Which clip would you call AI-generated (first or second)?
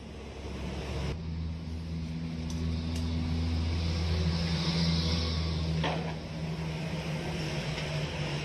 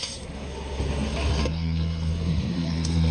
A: second